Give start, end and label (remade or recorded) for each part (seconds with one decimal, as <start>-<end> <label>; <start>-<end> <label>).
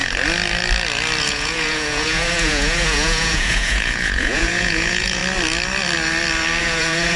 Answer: 0.0-1.2 recorded; 1.2-5.2 remade; 5.2-6.6 recorded; 6.6-7.2 remade